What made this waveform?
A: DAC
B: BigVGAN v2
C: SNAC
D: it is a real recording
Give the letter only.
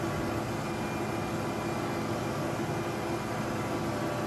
D